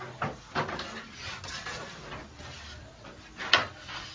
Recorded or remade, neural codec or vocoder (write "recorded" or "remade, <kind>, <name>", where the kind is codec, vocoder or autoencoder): recorded